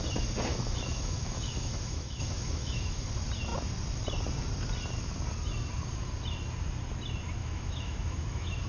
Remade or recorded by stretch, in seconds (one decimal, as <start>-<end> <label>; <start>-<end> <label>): 0.0-0.5 recorded; 0.5-3.1 remade; 3.1-7.4 recorded; 7.4-8.7 remade